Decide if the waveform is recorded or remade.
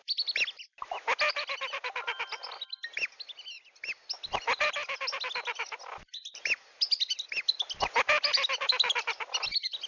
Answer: recorded